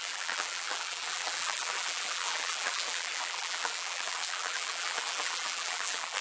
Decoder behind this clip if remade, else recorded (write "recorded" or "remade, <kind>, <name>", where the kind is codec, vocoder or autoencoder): remade, vocoder, BigVGAN v2